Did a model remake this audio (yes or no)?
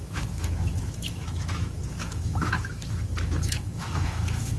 yes